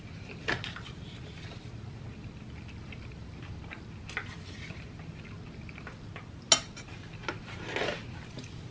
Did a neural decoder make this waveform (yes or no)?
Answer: no